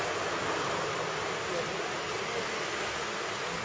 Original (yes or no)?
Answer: yes